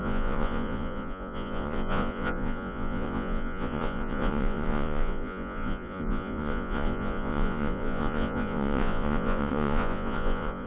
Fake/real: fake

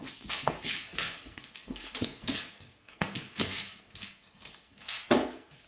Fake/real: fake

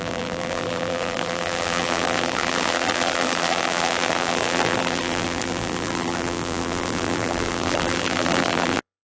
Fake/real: fake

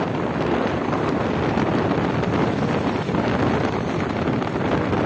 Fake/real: real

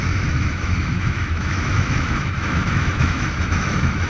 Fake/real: fake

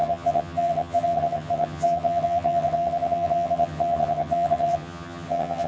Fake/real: fake